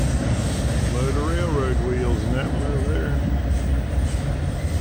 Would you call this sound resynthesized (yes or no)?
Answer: no